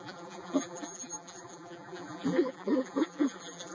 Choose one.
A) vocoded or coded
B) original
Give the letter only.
A